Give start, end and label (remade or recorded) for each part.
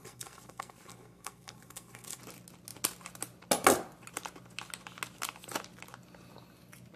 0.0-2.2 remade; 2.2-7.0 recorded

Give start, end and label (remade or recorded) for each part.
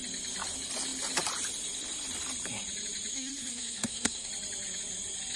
0.0-3.1 recorded; 3.1-4.3 remade; 4.3-5.4 recorded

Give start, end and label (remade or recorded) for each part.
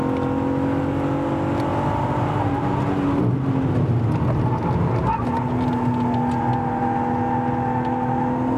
0.0-8.6 recorded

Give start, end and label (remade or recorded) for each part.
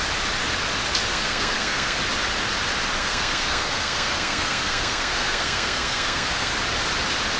0.0-1.1 recorded; 1.1-2.0 remade; 2.0-3.0 recorded; 3.0-6.5 remade; 6.5-7.4 recorded